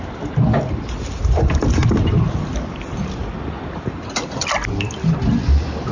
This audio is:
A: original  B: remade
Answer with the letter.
A